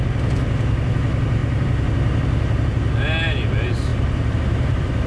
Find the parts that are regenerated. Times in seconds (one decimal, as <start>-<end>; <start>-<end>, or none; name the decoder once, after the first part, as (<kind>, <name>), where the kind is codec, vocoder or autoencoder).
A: 3.9-5.1 (vocoder, BigVGAN v2)